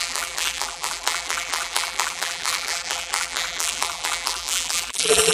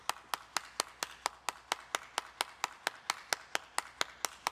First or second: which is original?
second